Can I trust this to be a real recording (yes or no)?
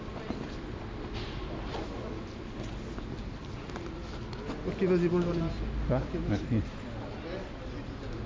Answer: yes